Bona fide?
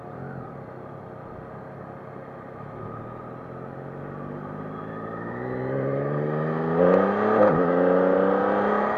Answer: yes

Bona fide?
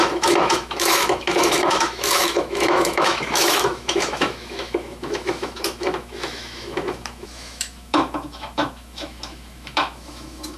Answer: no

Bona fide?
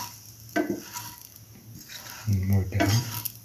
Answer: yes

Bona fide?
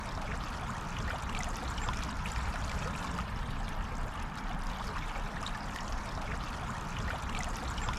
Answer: yes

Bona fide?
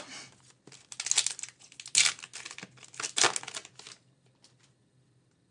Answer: yes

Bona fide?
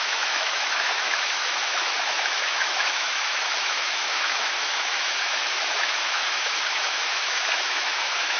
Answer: no